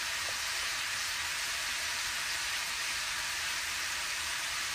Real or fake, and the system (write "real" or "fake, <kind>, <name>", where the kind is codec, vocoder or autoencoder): fake, vocoder, BigVGAN v2